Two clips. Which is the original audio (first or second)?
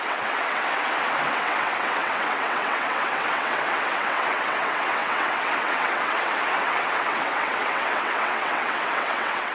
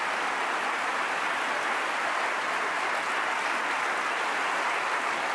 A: second